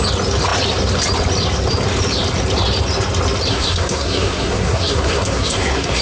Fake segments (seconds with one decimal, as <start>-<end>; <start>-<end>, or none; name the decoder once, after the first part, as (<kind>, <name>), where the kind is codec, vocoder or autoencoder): 3.5-6.0 (codec, SNAC)